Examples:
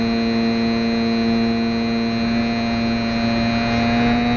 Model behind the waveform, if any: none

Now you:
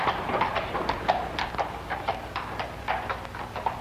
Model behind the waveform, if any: none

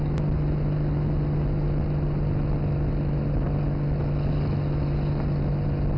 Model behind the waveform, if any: none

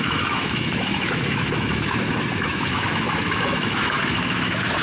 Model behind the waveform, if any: autoencoder, DAC-VAE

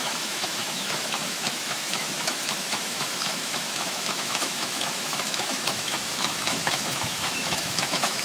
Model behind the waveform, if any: autoencoder, DAC-VAE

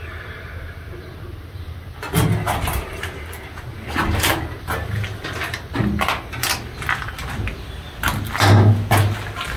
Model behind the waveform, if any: none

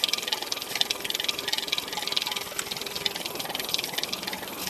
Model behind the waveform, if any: none